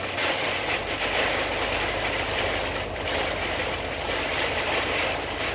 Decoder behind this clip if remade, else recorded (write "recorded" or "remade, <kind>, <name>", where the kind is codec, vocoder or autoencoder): recorded